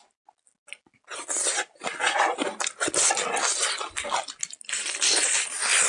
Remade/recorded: recorded